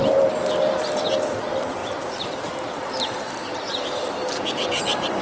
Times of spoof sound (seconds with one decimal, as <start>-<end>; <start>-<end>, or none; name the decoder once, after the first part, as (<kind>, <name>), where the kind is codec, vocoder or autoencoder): 0.0-5.2 (vocoder, BigVGAN v2)